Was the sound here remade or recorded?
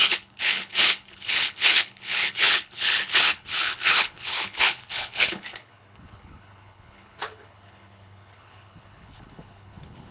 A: remade